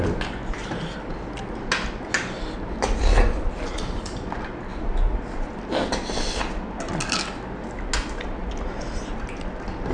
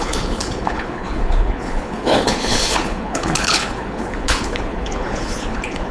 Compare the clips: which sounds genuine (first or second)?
first